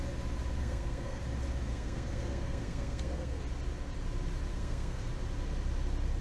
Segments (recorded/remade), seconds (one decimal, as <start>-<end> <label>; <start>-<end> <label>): 0.0-0.6 recorded; 0.6-1.2 remade; 1.2-1.7 recorded; 1.7-3.4 remade; 3.4-4.5 recorded; 4.5-5.1 remade; 5.1-6.2 recorded